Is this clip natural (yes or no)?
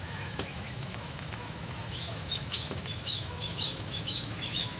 no